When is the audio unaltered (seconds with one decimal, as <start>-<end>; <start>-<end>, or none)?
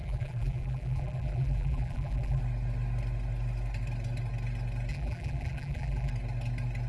2.4-4.9; 6.1-6.9